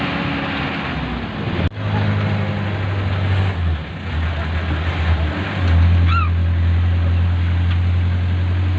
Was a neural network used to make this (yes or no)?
no